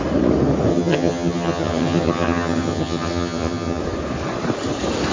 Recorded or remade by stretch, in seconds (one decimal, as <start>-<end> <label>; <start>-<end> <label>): 0.0-0.7 recorded; 0.7-3.8 remade; 3.8-5.1 recorded